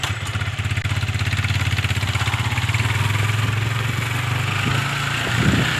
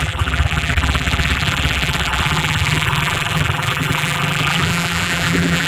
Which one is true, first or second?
first